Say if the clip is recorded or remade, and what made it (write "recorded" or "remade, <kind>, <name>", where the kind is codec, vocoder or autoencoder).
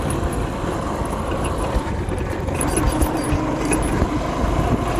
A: recorded